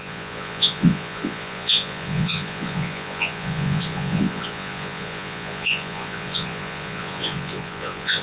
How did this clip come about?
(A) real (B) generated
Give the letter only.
B